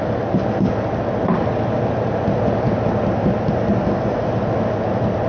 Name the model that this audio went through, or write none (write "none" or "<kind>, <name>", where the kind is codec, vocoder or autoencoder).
none